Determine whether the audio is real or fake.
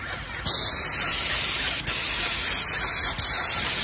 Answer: real